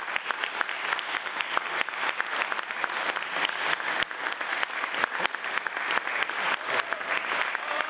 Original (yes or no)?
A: yes